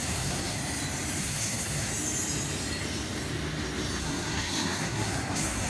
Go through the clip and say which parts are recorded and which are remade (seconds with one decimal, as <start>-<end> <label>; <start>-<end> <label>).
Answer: 0.0-0.6 remade; 0.6-1.2 recorded; 1.2-1.9 remade; 1.9-4.0 recorded; 4.0-5.7 remade